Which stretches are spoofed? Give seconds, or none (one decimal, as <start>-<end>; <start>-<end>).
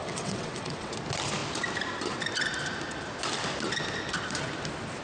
0.0-0.9